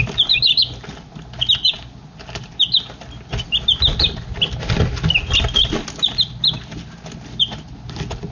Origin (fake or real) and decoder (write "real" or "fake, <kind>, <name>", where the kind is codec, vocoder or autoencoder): real